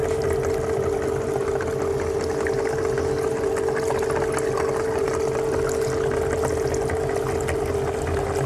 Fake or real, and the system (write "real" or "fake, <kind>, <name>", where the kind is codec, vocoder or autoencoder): real